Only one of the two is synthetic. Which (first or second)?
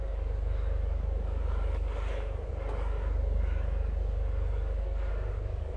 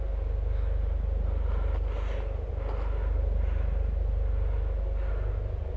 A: first